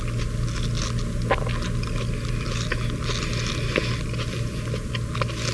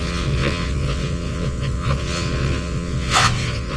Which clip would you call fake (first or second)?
second